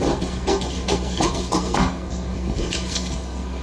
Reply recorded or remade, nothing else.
remade